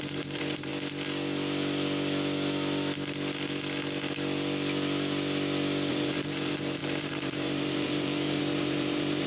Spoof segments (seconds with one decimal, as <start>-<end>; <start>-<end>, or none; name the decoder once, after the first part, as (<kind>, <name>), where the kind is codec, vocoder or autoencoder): 0.0-0.7 (vocoder, BigVGAN v2); 5.9-9.3